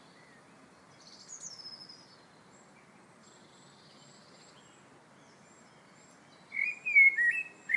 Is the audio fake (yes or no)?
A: no